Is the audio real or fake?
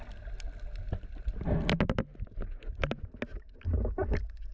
real